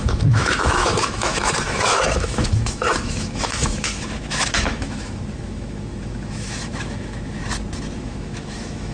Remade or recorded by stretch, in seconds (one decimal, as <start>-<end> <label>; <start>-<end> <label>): 0.0-7.4 remade; 7.4-8.0 recorded; 8.0-8.9 remade